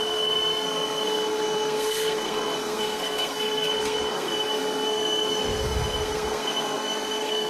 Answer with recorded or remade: remade